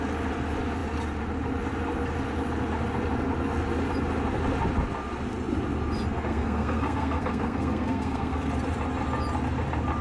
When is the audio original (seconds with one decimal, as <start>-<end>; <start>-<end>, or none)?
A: 0.0-6.3; 8.5-10.0